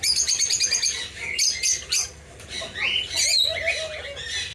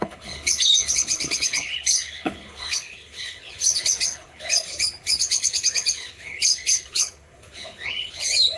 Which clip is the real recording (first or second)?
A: first